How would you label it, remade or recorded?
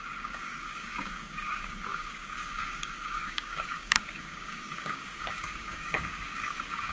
remade